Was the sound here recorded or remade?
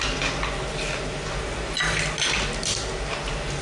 recorded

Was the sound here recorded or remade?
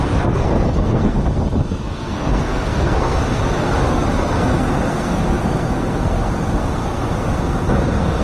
remade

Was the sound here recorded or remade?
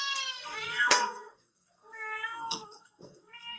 remade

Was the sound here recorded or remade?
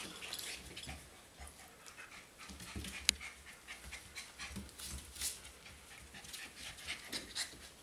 recorded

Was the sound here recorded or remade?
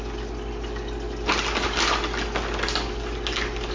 recorded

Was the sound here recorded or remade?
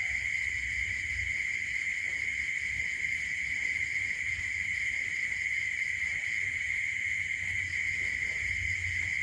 recorded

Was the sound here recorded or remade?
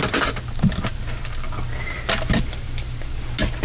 recorded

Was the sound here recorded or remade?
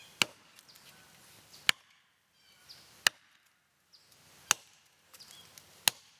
recorded